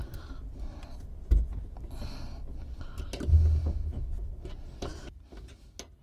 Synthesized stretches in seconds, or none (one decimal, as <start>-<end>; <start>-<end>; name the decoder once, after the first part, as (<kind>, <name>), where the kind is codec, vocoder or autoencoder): none